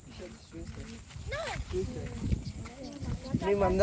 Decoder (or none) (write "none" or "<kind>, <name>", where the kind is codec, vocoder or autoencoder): none